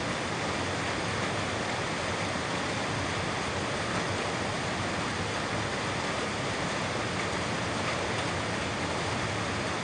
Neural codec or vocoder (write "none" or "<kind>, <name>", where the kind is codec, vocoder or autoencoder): none